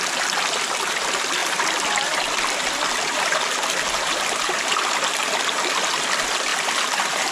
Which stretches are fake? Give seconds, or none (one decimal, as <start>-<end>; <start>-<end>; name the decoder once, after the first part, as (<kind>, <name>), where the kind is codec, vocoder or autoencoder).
6.5-7.3 (vocoder, BigVGAN v2)